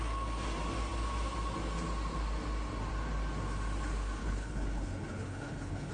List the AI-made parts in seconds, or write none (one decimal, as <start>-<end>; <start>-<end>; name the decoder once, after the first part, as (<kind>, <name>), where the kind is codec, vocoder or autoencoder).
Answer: 4.2-5.9 (codec, HILCodec)